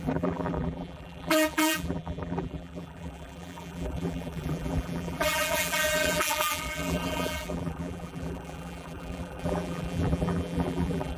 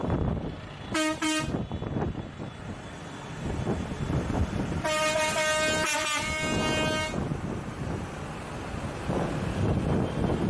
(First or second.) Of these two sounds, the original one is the second